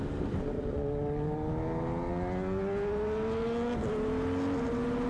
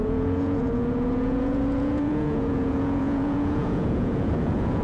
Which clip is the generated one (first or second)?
second